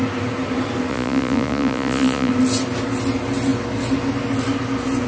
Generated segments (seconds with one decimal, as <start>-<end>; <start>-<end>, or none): 0.9-2.3